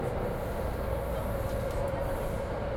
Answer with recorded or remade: recorded